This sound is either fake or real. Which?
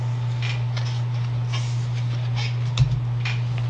real